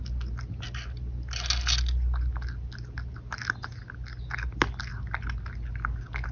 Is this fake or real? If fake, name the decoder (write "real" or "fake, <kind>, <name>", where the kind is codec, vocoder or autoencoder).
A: real